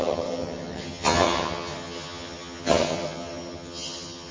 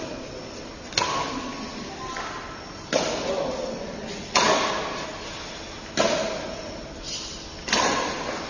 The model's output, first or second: first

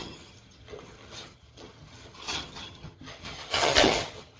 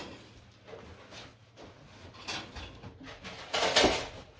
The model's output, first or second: first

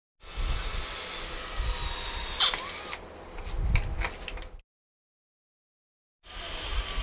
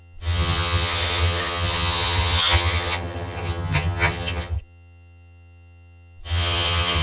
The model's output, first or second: second